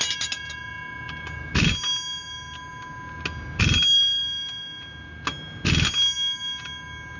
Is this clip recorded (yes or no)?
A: yes